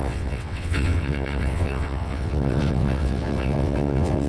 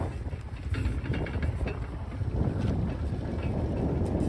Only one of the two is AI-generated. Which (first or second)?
first